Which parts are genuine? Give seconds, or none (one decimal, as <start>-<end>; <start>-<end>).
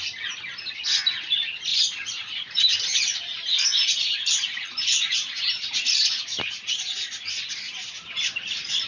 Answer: 0.0-1.7; 6.1-8.9